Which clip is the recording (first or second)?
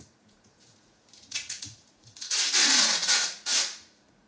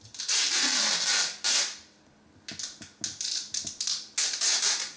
second